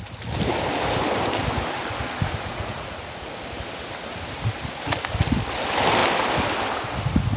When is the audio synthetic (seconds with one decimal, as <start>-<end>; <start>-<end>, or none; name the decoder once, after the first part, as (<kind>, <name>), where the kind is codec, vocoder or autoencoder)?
2.5-3.3 (vocoder, Vocos)